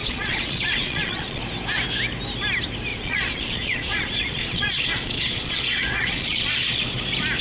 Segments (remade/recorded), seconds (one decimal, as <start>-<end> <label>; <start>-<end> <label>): 0.0-1.4 remade; 1.4-2.9 recorded; 2.9-7.0 remade; 7.0-7.4 recorded